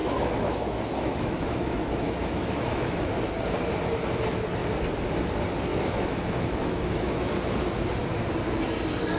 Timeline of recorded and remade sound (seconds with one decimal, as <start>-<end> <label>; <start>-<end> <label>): 0.0-3.3 remade; 3.3-5.7 recorded; 5.7-7.3 remade; 7.3-9.2 recorded